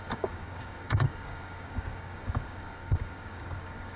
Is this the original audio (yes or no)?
no